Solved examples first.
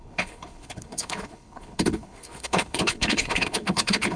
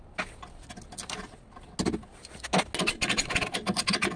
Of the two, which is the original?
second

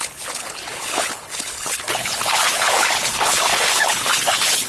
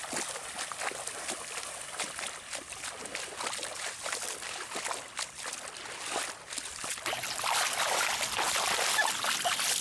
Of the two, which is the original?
second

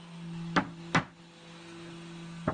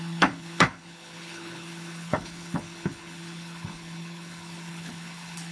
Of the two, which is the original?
first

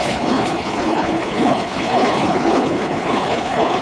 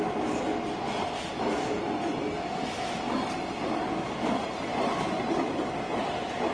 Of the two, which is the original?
second